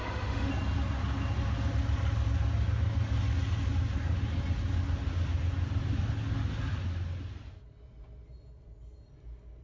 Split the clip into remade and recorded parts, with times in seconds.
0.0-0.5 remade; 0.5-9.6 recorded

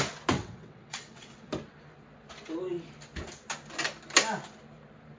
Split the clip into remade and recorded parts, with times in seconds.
0.0-0.4 recorded; 0.4-1.5 remade; 1.5-5.2 recorded

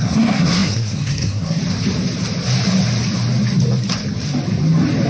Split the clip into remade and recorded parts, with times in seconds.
0.0-1.6 remade; 1.6-5.1 recorded

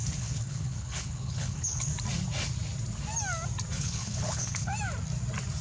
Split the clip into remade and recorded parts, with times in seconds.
0.0-1.9 remade; 1.9-3.8 recorded; 3.8-4.7 remade; 4.7-5.6 recorded

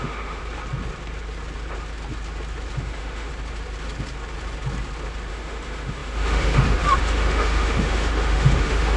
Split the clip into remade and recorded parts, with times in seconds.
0.0-0.4 remade; 0.4-2.8 recorded; 2.8-3.3 remade; 3.3-5.3 recorded; 5.3-9.0 remade

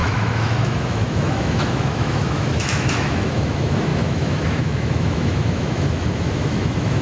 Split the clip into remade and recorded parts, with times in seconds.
0.0-7.0 remade

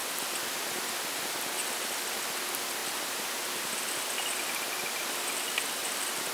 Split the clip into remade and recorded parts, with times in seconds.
0.0-6.3 recorded

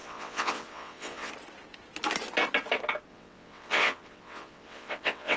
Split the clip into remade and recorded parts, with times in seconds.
0.0-1.3 remade; 1.3-3.1 recorded; 3.1-5.4 remade